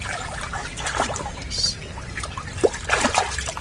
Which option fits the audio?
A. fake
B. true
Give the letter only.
B